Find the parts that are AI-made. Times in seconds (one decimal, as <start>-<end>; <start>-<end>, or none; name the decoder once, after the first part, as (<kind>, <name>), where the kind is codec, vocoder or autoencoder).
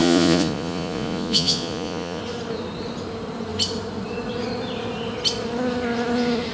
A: 0.0-2.2 (vocoder, Vocos)